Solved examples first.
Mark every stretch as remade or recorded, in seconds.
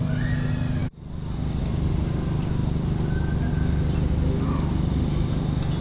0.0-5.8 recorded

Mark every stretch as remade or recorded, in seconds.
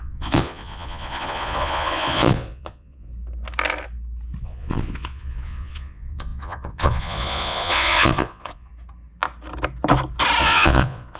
0.0-3.1 remade; 3.1-4.4 recorded; 4.4-8.7 remade; 8.7-10.4 recorded; 10.4-11.2 remade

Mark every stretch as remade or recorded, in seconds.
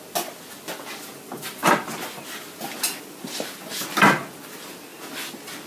0.0-5.7 recorded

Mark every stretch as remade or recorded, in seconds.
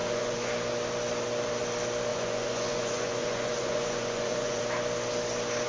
0.0-0.5 remade; 0.5-2.1 recorded; 2.1-4.6 remade; 4.6-5.7 recorded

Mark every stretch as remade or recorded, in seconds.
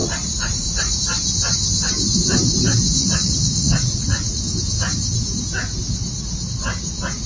0.0-1.0 remade; 1.0-3.0 recorded; 3.0-4.4 remade; 4.4-7.3 recorded